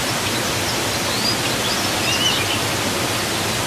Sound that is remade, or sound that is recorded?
recorded